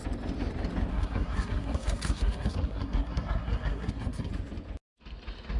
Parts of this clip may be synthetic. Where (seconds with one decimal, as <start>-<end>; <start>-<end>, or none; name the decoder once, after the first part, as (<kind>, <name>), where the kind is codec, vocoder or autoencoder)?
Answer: 0.9-4.3 (codec, SNAC)